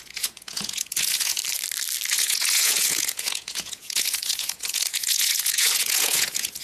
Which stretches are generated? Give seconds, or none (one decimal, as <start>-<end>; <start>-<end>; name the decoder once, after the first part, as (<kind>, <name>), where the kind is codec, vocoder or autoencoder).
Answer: 0.0-1.4 (vocoder, Vocos); 2.1-6.6